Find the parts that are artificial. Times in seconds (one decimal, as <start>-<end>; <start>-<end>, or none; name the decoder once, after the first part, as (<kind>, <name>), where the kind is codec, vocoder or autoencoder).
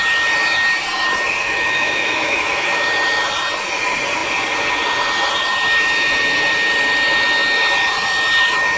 1.4-2.9 (autoencoder, DAC-VAE)